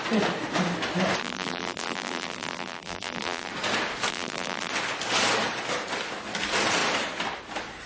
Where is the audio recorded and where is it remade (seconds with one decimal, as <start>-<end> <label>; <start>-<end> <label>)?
0.0-1.2 recorded; 1.2-3.5 remade; 3.5-4.1 recorded; 4.1-4.7 remade; 4.7-7.9 recorded